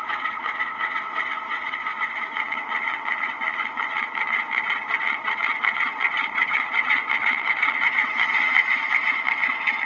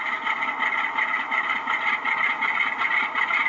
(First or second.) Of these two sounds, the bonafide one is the second